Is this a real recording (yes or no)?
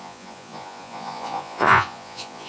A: no